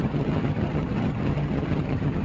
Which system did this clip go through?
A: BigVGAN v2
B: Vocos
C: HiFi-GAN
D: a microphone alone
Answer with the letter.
C